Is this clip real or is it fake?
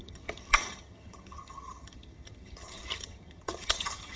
fake